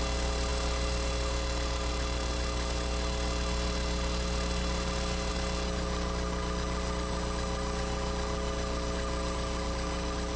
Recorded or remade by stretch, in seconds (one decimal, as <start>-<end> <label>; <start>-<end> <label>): 0.0-10.4 recorded